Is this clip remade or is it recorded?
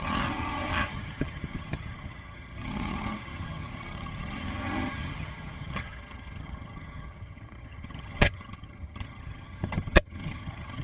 remade